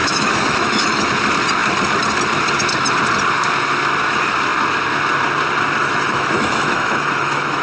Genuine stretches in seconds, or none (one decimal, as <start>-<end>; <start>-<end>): 1.1-5.8